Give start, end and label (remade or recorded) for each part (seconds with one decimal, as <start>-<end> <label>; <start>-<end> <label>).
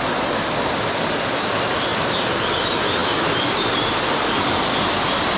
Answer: 0.0-5.4 recorded